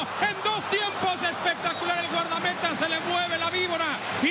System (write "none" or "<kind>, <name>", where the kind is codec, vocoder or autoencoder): none